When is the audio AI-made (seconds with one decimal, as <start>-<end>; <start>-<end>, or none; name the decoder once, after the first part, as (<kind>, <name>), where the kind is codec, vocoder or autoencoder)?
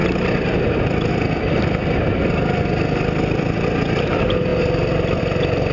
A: none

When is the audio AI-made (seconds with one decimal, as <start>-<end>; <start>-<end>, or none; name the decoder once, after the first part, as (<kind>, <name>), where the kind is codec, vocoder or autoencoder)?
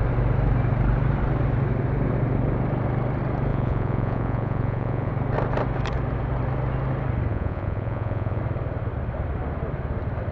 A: 3.5-5.1 (vocoder, Vocos); 7.3-8.4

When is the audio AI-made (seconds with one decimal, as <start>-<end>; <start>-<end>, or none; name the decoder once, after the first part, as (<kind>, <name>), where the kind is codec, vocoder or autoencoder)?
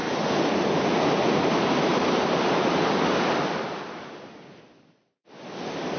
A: none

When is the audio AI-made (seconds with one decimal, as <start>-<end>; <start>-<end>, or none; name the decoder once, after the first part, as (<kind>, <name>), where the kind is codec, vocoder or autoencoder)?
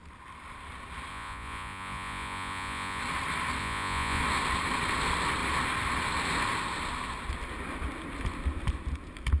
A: 1.1-3.0 (vocoder, Vocos); 3.6-4.2